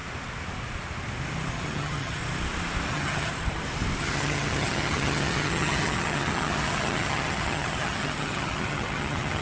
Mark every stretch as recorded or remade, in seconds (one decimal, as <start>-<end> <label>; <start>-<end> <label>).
0.0-1.5 recorded; 1.5-2.2 remade; 2.2-2.9 recorded; 2.9-3.3 remade; 3.3-4.0 recorded; 4.0-9.4 remade